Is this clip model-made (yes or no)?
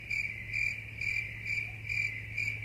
no